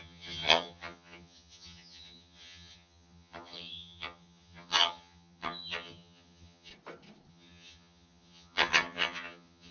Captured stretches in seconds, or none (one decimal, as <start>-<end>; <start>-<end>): 6.7-7.3